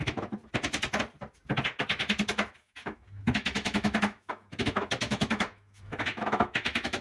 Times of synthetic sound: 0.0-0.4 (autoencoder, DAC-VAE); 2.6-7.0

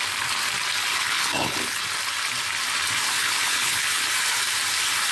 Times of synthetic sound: 0.9-1.8 (codec, HILCodec); 3.2-4.1